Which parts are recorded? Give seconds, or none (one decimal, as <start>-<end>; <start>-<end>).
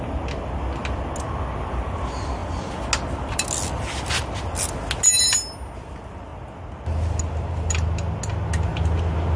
0.0-9.4